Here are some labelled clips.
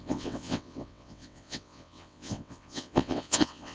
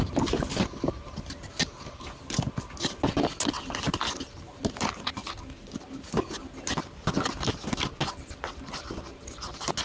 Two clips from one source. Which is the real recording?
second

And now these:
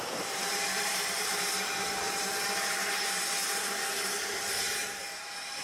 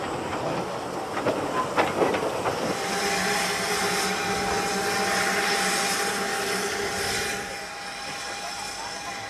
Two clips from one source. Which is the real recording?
second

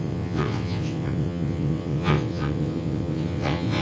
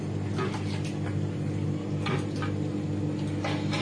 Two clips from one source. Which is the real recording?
second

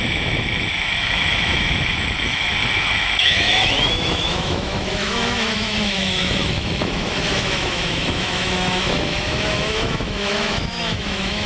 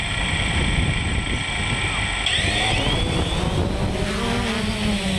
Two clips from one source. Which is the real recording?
second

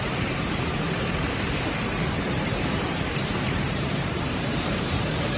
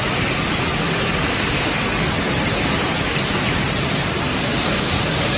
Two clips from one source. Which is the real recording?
second